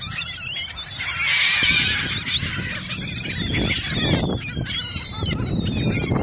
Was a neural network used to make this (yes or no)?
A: no